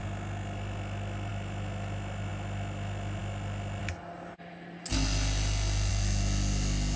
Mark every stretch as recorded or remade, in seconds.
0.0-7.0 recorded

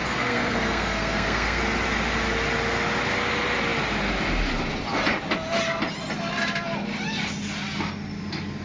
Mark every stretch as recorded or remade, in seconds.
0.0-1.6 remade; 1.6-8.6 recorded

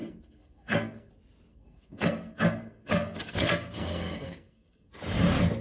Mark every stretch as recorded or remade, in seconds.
0.0-1.1 remade; 1.1-1.5 recorded; 1.5-4.9 remade; 4.9-5.6 recorded

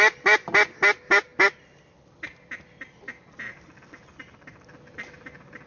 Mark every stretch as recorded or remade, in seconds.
0.0-5.7 recorded